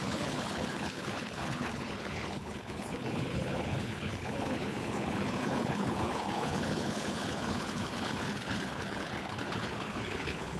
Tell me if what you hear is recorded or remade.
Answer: remade